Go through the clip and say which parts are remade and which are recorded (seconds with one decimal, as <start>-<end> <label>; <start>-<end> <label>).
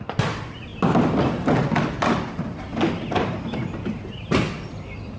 0.0-5.2 recorded